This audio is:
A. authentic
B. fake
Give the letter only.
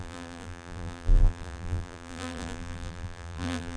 B